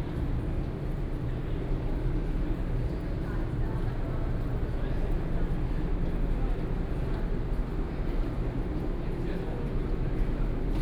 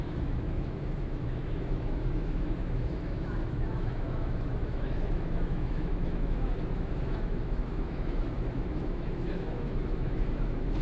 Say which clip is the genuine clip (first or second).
first